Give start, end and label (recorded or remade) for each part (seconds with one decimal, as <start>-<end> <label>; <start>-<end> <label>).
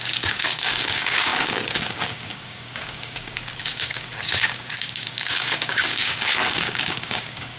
0.0-7.6 remade